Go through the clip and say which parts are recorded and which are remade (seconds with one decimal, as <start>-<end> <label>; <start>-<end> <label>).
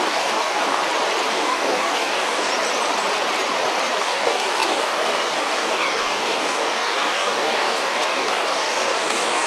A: 0.0-0.8 remade; 0.8-1.3 recorded; 1.3-2.5 remade; 2.5-4.0 recorded; 4.0-9.5 remade